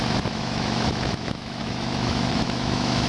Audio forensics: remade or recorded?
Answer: remade